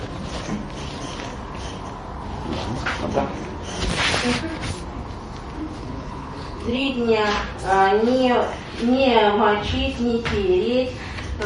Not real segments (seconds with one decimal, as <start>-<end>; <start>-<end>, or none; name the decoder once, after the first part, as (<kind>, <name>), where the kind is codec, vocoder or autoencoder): 5.8-6.9 (codec, HILCodec)